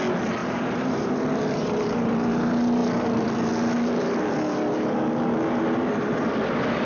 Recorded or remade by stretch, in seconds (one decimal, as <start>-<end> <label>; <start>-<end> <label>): 0.0-0.4 recorded; 0.4-1.1 remade; 1.1-1.6 recorded; 1.6-2.1 remade; 2.1-6.8 recorded

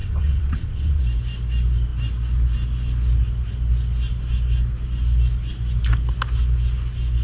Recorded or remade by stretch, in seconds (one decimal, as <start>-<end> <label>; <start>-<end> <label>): 0.0-1.0 remade; 1.0-7.2 recorded